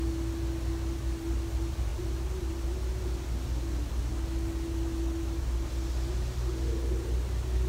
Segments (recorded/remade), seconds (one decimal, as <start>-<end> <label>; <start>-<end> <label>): 0.0-7.7 recorded